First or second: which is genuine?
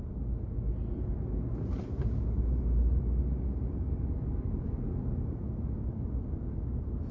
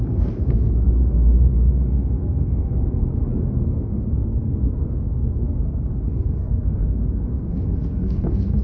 first